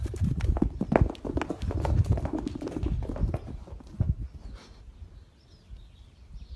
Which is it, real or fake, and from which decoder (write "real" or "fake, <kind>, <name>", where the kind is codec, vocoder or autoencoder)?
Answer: real